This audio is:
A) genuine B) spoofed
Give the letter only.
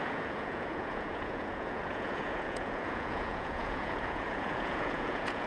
B